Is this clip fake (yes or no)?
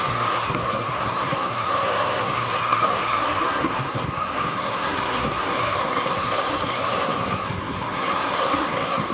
yes